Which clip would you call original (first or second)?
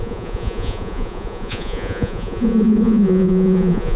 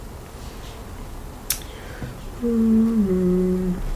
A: second